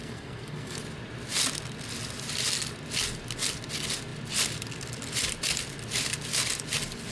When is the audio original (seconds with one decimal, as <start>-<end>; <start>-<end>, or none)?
0.8-7.1